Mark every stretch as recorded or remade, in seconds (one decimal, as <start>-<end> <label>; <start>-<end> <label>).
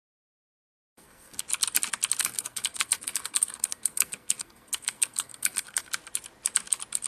0.0-0.8 recorded; 0.8-1.4 remade; 1.4-2.2 recorded; 2.2-5.9 remade; 5.9-7.1 recorded